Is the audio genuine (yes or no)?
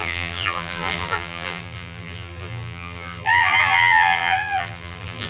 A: no